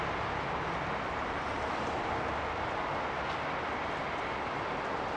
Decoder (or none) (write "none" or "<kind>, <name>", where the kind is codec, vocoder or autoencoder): none